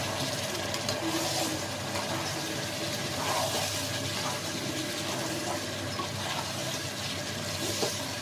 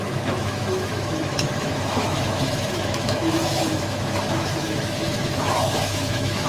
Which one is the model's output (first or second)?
second